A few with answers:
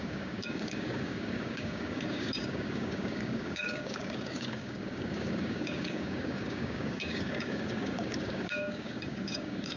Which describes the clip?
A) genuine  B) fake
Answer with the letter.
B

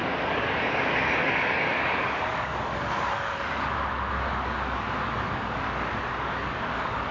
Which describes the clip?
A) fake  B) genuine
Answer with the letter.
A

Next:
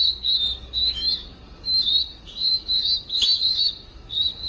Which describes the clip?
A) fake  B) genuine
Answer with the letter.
A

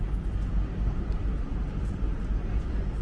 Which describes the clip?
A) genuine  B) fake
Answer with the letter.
A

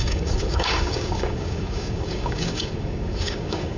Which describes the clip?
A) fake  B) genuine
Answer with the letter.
A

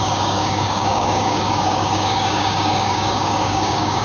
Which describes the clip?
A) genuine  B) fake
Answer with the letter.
B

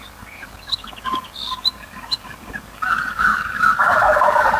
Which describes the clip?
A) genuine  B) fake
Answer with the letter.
B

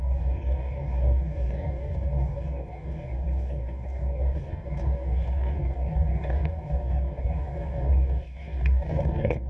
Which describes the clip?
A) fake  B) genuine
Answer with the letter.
A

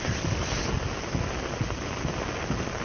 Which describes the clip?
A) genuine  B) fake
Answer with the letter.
A